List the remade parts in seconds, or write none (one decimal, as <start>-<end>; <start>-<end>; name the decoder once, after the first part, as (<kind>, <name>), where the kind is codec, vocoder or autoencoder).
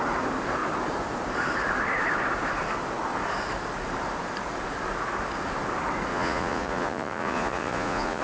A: 6.1-8.2 (vocoder, Vocos)